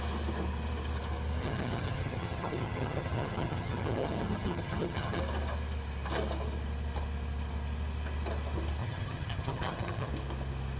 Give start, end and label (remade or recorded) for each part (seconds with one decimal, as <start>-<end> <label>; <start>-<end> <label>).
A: 0.0-1.4 recorded; 1.4-5.2 remade; 5.2-8.8 recorded; 8.8-10.1 remade; 10.1-10.8 recorded